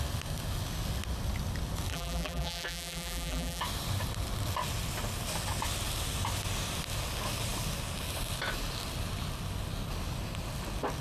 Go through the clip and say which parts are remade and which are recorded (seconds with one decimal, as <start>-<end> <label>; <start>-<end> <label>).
0.0-1.9 recorded; 1.9-3.6 remade; 3.6-11.0 recorded